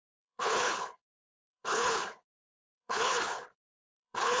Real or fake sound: fake